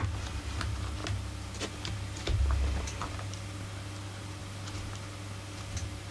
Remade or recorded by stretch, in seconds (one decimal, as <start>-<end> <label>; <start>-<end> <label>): 0.0-6.1 recorded